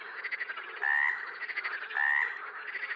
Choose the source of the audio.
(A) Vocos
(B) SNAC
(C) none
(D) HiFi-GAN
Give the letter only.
C